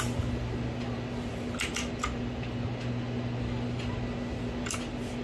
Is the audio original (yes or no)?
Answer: yes